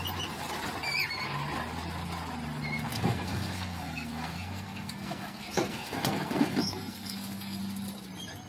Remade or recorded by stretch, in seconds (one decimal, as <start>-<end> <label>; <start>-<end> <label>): 0.0-2.9 recorded; 2.9-7.6 remade; 7.6-8.5 recorded